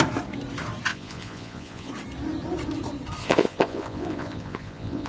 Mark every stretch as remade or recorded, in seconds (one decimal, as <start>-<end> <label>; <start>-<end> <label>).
0.0-0.9 recorded; 0.9-1.9 remade; 1.9-3.2 recorded; 3.2-5.1 remade